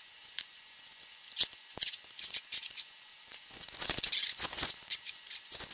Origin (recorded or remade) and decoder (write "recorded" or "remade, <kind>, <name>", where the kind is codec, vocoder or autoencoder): remade, vocoder, Vocos